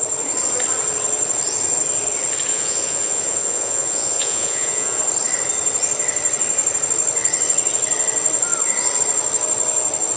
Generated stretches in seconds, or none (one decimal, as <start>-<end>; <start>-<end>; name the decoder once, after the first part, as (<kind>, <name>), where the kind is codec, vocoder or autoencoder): 2.5-5.0 (vocoder, Vocos)